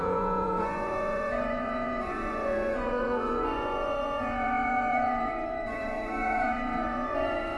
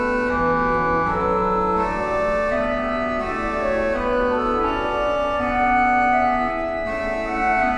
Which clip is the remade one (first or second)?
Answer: first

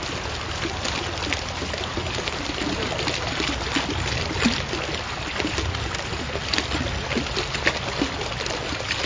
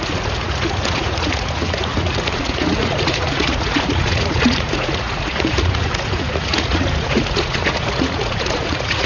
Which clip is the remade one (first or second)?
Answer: second